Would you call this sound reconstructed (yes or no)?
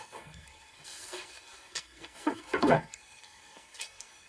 yes